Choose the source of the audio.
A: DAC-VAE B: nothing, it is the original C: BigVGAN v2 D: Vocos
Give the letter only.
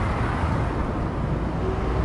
B